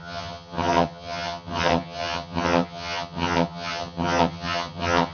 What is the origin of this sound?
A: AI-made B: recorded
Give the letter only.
A